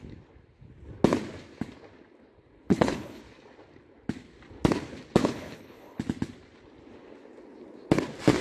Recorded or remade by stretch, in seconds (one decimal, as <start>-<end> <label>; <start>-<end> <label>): 0.0-2.7 recorded; 2.7-3.2 remade; 3.2-5.2 recorded; 5.2-6.0 remade; 6.0-8.4 recorded